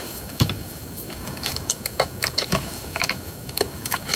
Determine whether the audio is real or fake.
fake